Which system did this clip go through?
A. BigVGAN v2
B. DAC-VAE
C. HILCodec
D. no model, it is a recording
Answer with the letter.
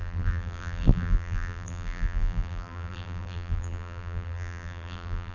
A